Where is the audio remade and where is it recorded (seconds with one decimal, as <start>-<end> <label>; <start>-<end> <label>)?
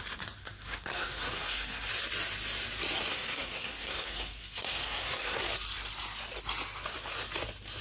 0.0-0.4 recorded; 0.4-1.9 remade; 1.9-3.1 recorded; 3.1-5.4 remade; 5.4-7.8 recorded